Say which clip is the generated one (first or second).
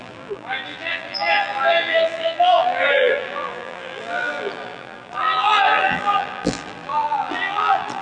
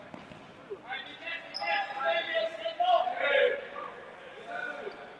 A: first